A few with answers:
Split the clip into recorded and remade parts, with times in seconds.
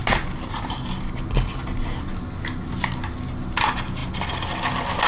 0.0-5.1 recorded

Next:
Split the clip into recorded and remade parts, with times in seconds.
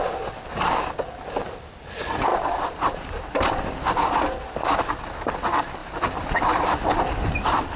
0.0-2.3 recorded; 2.3-3.5 remade; 3.5-5.8 recorded; 5.8-6.6 remade; 6.6-7.8 recorded